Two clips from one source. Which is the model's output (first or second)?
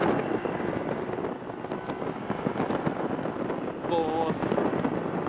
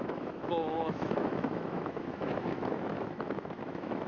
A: second